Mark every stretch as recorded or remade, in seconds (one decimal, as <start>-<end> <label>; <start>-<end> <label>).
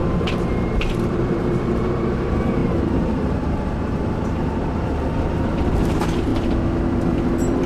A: 0.0-6.3 remade; 6.3-7.1 recorded; 7.1-7.7 remade